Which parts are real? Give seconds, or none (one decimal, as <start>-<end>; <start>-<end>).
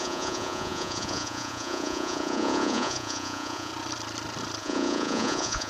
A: 3.7-4.6